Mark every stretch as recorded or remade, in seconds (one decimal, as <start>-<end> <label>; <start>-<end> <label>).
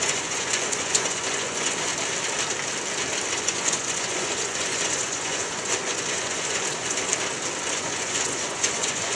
0.0-1.9 remade; 1.9-3.4 recorded; 3.4-7.1 remade; 7.1-7.7 recorded; 7.7-9.2 remade